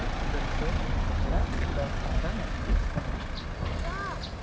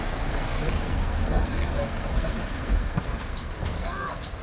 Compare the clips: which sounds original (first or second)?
first